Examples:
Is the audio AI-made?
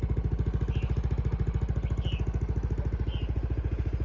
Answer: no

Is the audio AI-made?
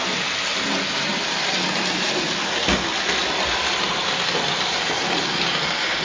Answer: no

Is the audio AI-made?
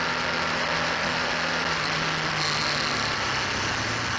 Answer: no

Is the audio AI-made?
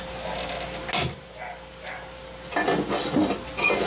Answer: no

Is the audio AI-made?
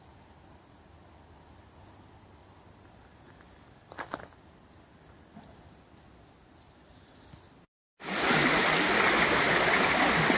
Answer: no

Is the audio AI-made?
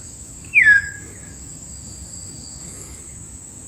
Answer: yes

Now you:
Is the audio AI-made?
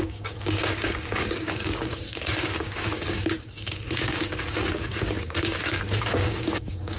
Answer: yes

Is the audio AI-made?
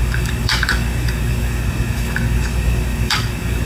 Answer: yes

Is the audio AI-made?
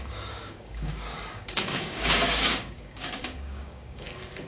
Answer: yes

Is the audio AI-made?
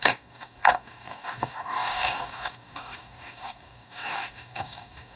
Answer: yes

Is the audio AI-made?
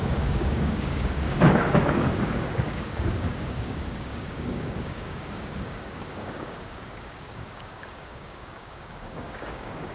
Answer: yes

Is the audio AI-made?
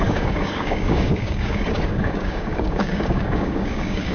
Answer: yes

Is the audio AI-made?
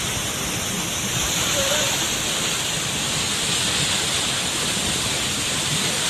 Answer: no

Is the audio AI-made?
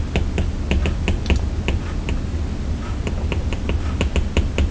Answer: no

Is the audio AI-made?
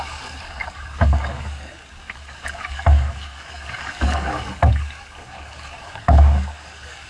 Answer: yes